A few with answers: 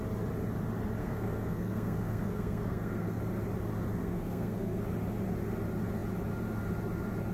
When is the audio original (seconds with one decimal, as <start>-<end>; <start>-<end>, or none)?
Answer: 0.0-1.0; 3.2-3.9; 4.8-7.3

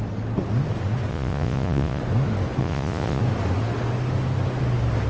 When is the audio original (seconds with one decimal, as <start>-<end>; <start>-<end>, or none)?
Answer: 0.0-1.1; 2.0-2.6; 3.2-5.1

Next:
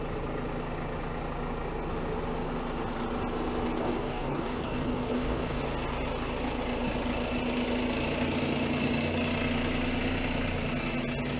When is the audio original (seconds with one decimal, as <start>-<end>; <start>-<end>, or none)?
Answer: 0.0-3.8; 5.6-11.4

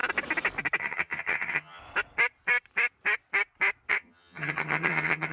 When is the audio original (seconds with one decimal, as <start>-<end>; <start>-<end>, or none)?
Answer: 0.0-0.8; 1.8-3.9

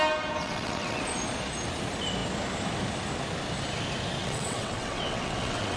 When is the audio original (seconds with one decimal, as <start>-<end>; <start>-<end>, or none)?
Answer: 0.0-0.4; 1.0-4.2

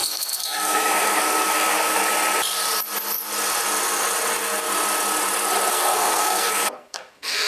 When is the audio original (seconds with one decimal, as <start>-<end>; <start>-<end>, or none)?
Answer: 2.0-5.7

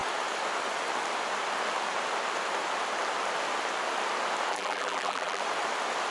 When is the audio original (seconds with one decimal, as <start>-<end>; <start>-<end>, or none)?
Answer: 0.0-4.5; 5.4-6.1

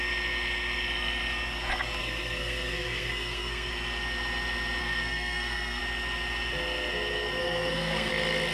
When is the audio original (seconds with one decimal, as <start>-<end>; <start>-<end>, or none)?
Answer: 0.0-2.0; 3.7-4.8; 5.8-7.4; 8.1-8.5